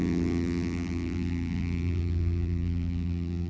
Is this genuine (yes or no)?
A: no